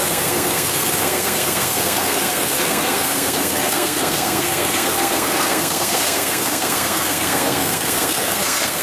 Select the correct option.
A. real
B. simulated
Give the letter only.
B